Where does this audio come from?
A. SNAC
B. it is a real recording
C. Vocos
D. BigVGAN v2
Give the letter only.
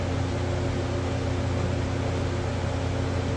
B